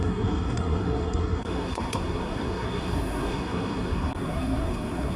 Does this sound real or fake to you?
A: fake